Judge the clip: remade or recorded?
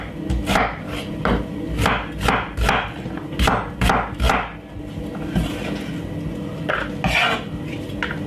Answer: recorded